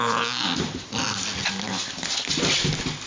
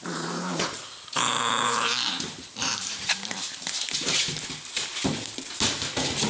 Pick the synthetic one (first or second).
second